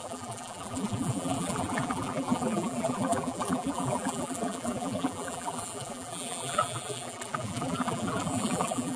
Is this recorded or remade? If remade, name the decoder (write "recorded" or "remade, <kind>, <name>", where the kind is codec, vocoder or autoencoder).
remade, vocoder, BigVGAN v2